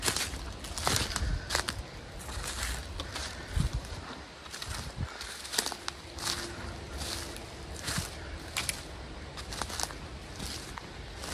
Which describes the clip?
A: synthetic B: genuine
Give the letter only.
B